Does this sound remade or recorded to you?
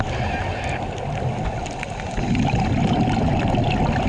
recorded